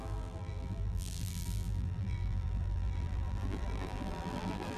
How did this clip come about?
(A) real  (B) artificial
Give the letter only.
B